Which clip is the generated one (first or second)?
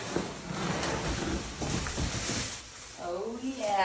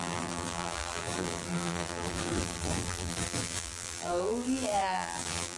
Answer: second